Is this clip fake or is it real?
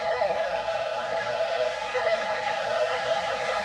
fake